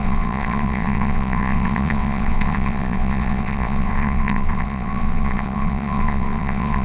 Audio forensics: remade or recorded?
remade